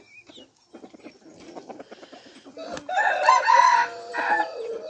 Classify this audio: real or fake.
real